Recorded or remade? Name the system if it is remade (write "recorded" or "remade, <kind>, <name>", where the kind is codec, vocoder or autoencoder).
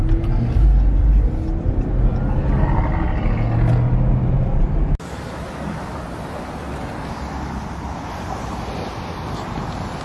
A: recorded